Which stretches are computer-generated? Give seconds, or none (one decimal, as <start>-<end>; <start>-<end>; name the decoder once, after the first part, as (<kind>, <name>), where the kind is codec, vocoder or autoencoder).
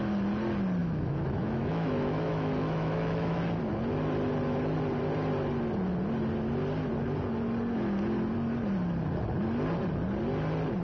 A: 0.8-3.4 (autoencoder, DAC-VAE)